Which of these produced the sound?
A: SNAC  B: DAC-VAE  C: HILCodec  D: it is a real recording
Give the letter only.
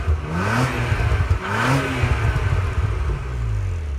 D